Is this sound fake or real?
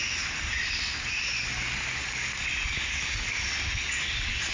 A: real